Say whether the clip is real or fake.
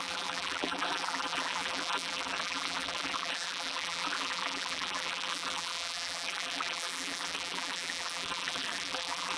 fake